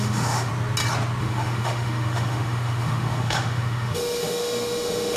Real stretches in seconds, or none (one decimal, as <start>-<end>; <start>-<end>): 0.5-1.2